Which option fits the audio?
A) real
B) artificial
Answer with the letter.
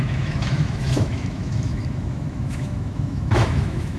B